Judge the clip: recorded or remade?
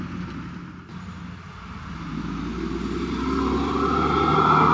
recorded